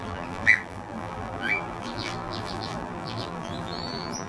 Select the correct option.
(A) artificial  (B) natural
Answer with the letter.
A